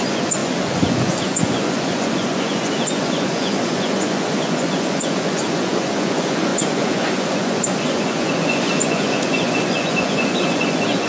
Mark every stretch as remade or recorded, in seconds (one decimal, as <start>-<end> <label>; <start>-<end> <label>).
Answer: 0.0-11.1 remade